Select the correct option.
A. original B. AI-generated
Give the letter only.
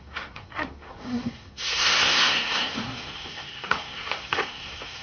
B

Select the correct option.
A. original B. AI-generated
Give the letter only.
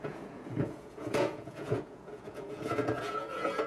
B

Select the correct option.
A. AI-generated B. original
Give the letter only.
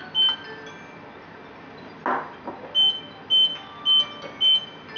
B